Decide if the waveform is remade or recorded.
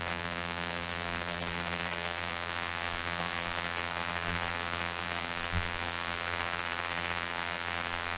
remade